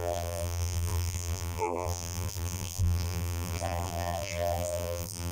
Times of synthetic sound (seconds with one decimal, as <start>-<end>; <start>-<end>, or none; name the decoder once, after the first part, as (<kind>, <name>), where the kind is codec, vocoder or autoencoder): 0.0-5.3 (vocoder, BigVGAN v2)